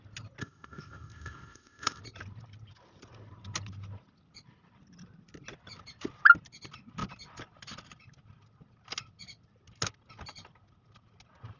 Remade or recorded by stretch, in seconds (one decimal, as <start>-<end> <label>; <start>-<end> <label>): 0.0-0.4 recorded; 0.4-2.0 remade; 2.0-11.6 recorded